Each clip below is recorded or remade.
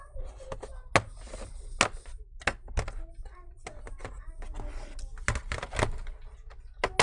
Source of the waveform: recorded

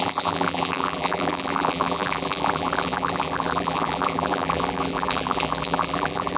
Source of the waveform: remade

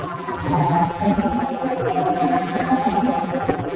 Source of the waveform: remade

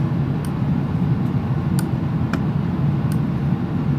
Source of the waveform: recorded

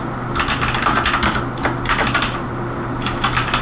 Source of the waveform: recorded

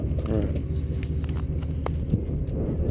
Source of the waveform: recorded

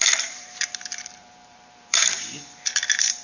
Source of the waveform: remade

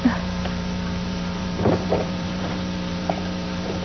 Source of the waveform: remade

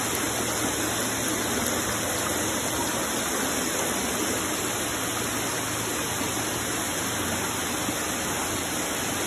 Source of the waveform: recorded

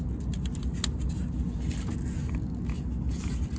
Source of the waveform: recorded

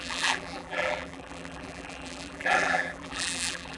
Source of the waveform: remade